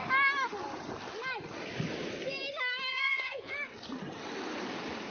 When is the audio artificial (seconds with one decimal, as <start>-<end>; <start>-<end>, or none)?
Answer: 2.9-3.5